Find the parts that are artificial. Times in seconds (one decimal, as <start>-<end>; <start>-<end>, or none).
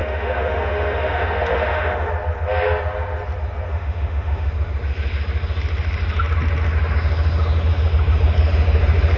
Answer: 0.0-2.1; 3.7-4.5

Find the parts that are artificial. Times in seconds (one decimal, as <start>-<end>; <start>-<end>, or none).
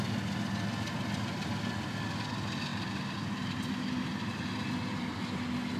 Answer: 2.7-4.4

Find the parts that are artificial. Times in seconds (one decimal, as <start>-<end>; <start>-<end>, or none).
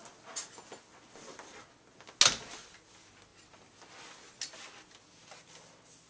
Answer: none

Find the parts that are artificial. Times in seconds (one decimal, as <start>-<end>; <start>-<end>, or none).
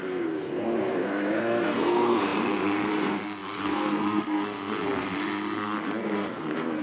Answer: 0.0-6.8